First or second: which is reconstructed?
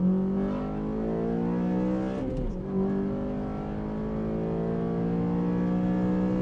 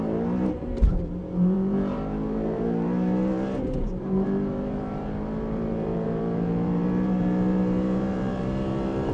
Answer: second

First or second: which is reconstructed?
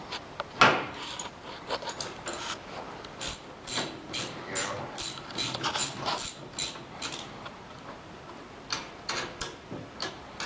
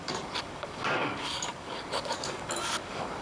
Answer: second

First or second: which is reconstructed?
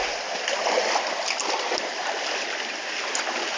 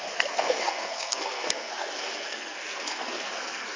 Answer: second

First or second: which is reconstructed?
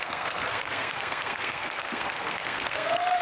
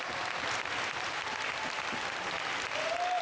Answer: first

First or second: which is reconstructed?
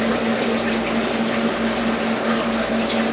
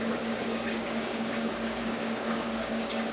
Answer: second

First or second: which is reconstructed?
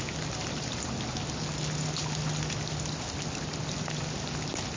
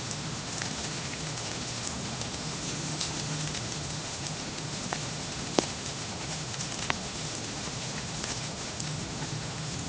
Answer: second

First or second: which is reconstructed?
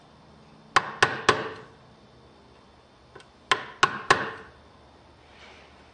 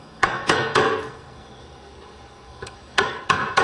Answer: second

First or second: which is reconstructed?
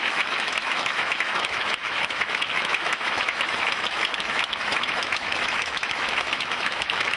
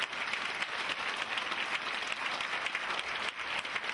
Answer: first